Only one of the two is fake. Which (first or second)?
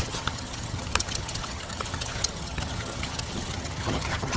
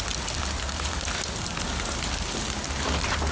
first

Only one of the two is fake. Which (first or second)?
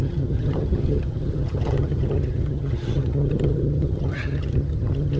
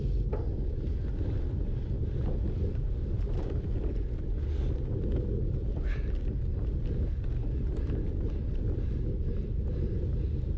first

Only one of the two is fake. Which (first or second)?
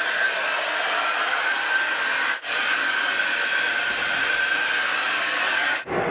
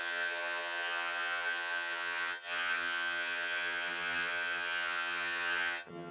second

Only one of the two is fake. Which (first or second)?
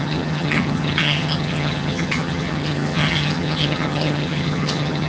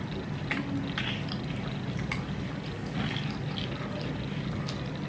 first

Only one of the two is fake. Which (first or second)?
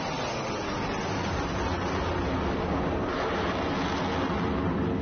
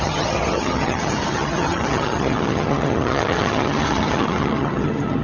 second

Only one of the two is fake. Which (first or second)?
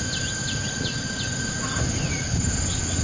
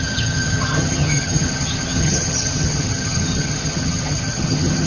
second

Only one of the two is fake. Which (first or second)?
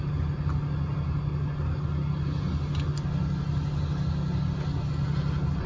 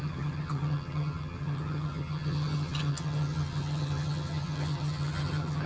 second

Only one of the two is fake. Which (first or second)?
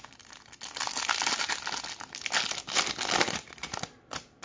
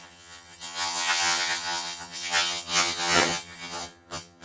second